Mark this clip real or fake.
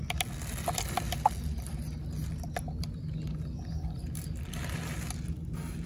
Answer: real